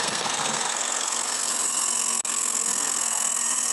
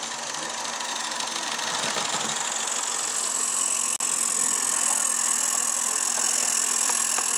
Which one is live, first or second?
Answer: second